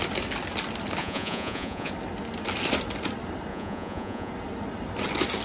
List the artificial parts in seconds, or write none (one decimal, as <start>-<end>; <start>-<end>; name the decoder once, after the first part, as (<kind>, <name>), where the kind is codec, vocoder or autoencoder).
1.0-1.9 (vocoder, Vocos); 3.5-4.3